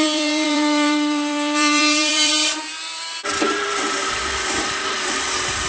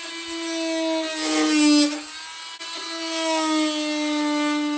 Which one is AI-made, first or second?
first